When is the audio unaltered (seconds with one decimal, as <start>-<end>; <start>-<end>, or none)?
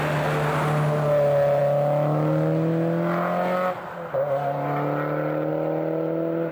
0.0-6.5